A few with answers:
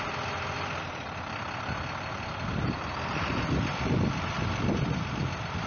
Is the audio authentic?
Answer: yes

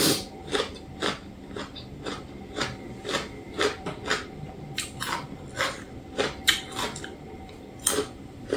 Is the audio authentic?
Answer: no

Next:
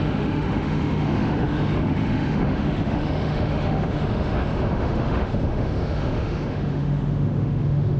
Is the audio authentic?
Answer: no